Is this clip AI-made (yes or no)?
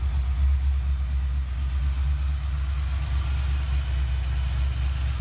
no